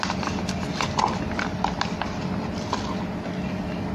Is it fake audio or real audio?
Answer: real